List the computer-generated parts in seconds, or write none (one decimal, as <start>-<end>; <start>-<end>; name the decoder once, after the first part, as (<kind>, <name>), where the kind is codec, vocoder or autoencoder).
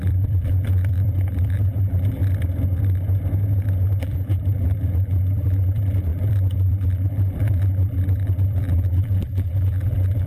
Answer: 0.0-2.2 (vocoder, BigVGAN v2); 4.0-10.3